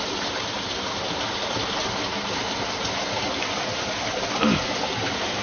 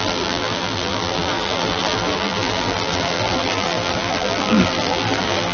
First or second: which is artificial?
second